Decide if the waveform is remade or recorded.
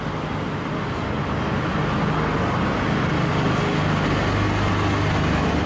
recorded